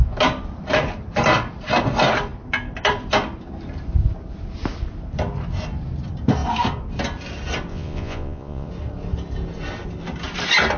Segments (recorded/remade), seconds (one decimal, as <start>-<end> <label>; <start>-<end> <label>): 0.0-7.7 recorded; 7.7-8.7 remade; 8.7-10.8 recorded